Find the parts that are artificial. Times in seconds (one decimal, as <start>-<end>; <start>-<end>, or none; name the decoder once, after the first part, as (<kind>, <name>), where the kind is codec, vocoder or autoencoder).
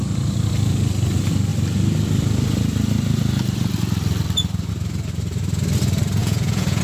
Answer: 6.2-6.8 (vocoder, Vocos)